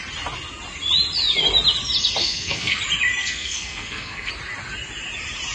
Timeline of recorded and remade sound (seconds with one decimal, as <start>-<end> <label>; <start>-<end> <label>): 0.0-2.2 recorded; 2.2-2.8 remade; 2.8-3.2 recorded; 3.2-4.3 remade; 4.3-5.5 recorded